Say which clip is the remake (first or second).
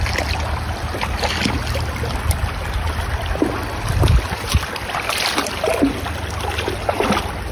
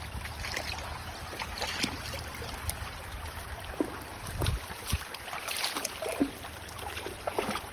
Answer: second